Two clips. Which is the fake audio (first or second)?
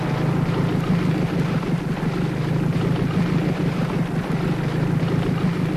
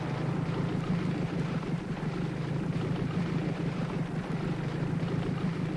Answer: second